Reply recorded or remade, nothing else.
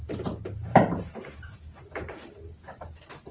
remade